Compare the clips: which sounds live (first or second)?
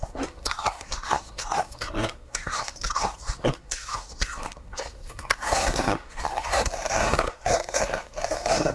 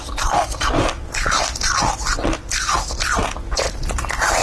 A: second